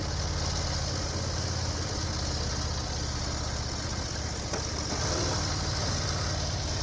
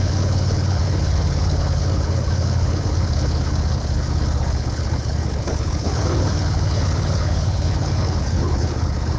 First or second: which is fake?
second